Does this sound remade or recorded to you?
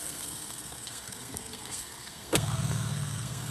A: remade